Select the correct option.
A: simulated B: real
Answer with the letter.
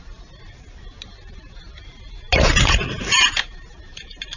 A